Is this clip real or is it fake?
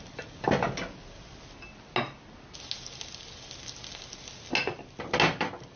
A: real